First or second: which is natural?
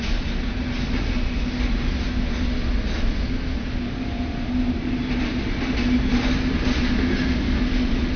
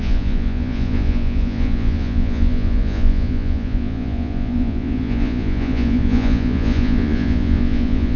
first